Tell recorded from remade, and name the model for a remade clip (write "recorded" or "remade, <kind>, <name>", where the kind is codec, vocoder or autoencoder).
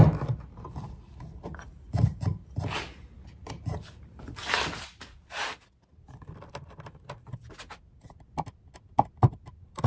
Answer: recorded